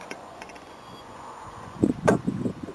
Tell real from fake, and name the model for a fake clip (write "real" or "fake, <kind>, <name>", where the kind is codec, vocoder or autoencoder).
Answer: fake, vocoder, Vocos